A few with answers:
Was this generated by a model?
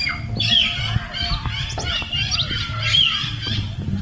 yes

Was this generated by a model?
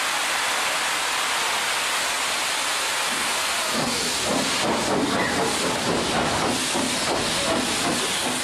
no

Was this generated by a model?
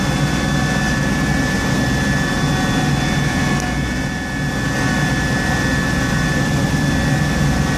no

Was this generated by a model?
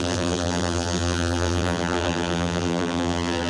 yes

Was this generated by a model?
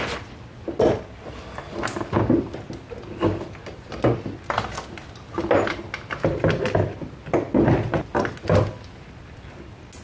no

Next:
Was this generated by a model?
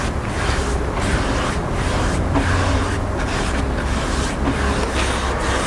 no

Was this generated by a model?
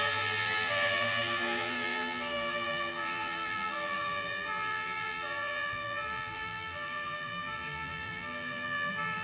yes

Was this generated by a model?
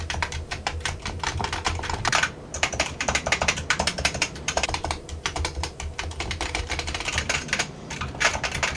yes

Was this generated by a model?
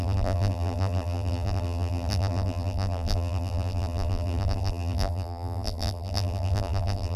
yes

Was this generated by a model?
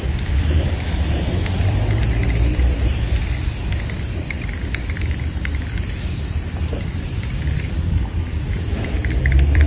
yes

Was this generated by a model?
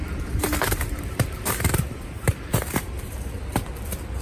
yes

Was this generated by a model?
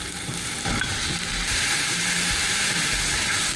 yes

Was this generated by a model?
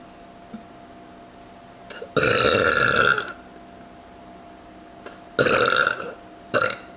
no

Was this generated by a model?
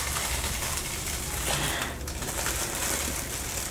no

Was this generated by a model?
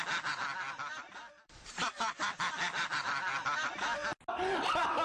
no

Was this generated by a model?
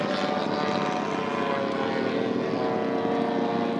no